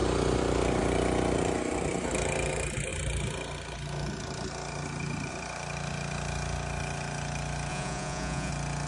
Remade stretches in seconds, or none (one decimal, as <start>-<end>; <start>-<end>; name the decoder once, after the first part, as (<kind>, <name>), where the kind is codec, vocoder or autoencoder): 7.7-8.5 (vocoder, Vocos)